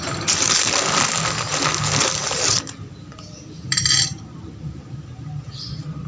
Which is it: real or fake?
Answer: real